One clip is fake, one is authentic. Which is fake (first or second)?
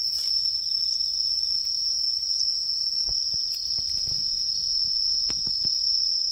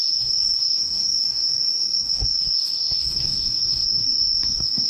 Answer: second